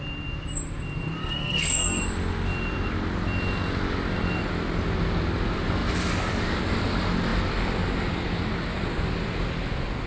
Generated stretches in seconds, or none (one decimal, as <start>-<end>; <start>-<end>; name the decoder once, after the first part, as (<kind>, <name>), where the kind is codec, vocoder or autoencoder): 1.2-2.0 (codec, SNAC)